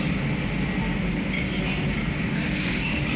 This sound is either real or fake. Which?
real